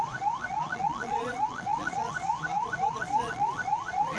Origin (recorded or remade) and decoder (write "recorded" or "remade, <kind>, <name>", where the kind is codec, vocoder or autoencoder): remade, vocoder, Vocos